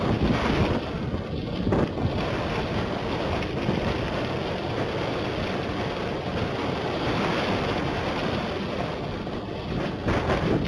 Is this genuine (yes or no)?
yes